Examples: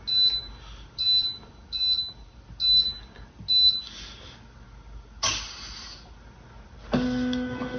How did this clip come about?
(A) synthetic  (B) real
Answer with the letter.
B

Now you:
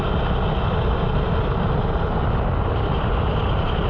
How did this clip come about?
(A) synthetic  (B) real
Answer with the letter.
B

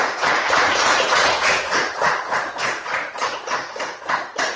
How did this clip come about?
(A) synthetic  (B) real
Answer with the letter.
A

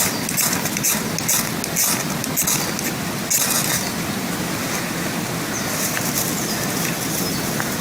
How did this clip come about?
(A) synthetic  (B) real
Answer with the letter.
B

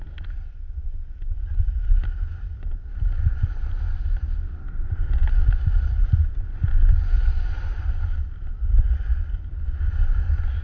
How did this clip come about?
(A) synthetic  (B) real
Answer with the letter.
B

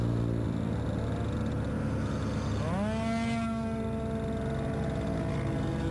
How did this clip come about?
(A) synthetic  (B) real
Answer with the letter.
B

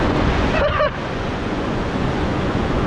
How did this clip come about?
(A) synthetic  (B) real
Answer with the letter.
A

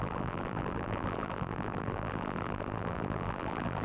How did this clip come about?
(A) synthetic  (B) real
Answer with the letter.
A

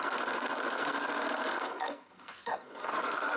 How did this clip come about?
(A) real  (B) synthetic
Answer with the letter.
B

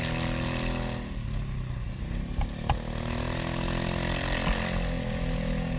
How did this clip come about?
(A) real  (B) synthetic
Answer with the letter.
A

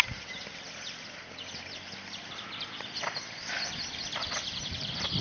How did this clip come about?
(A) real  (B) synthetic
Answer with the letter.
B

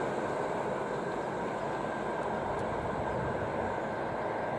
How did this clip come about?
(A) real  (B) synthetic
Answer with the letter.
A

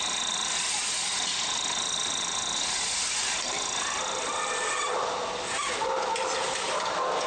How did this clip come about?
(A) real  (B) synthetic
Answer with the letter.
A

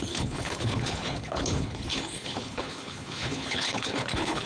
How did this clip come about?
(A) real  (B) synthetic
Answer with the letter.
B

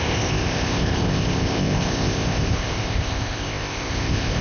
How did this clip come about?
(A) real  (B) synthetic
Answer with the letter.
B